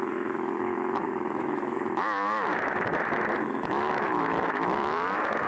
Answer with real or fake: fake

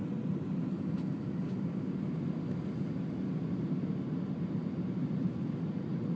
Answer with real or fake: real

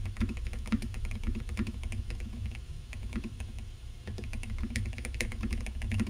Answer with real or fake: fake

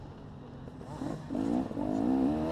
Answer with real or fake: real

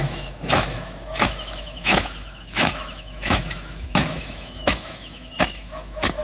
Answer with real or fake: fake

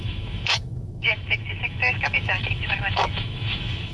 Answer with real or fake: fake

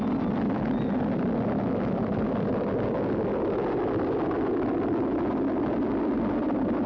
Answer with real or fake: real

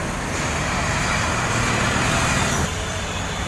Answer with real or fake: real